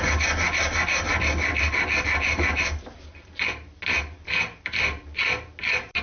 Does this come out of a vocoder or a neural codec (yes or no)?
no